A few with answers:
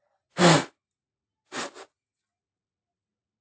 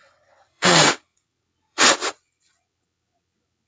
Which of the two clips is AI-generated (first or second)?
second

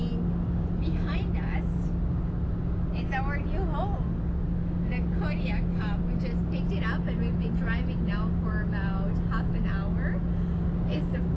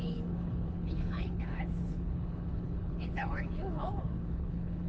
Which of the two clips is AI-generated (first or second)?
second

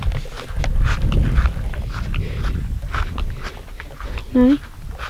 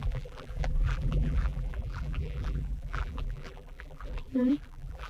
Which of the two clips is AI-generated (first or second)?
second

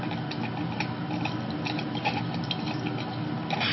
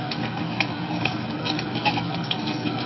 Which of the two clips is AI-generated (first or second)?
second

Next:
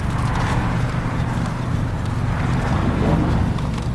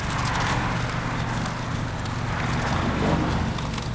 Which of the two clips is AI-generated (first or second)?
first